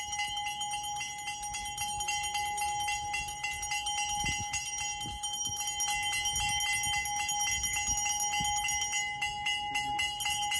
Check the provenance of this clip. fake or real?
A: real